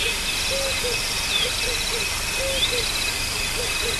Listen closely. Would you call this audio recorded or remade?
recorded